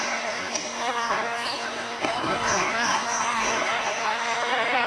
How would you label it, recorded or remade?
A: remade